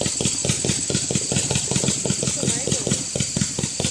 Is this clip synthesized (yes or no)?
no